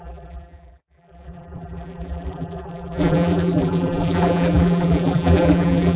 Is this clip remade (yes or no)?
yes